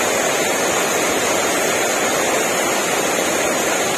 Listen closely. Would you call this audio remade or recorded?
recorded